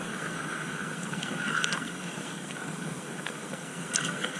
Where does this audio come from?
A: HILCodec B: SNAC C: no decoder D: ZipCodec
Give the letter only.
B